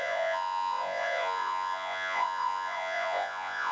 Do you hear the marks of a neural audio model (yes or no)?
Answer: yes